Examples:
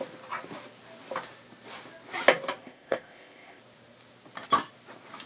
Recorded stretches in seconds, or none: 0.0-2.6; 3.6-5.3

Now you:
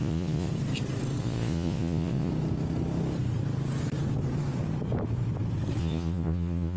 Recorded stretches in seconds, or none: 0.5-1.2; 2.3-5.8

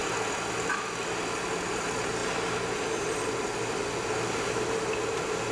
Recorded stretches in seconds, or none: 0.0-5.5

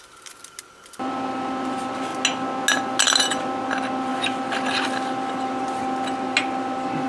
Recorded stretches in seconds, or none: 0.0-7.1

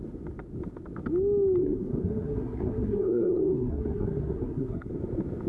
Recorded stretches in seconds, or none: 0.0-1.6; 4.9-5.5

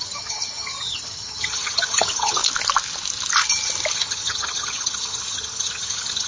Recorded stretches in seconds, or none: 2.4-3.9

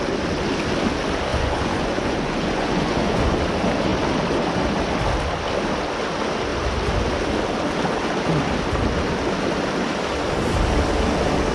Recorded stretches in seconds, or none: 0.0-1.3; 3.4-11.5

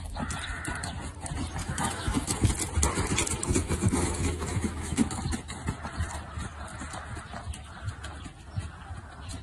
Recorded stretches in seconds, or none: 0.0-1.6; 2.5-3.4; 5.2-9.4